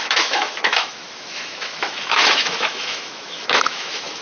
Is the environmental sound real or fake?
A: fake